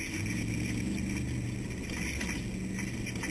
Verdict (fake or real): real